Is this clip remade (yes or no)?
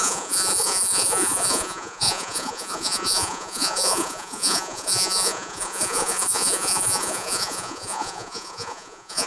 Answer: yes